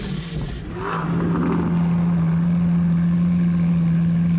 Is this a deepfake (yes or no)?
no